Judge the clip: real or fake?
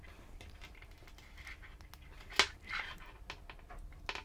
real